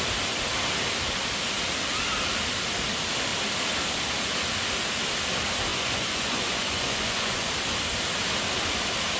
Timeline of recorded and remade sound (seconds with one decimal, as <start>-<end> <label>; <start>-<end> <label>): 0.0-5.7 recorded; 5.7-7.5 remade; 7.5-9.2 recorded